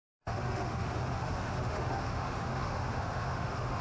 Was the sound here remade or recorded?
remade